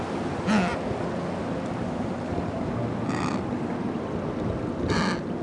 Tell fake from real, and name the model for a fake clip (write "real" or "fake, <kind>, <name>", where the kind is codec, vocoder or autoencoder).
real